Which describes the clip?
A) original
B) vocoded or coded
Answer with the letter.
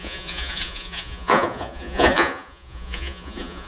B